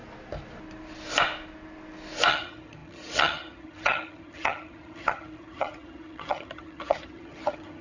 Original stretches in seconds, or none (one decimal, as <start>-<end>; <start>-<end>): 0.0-2.3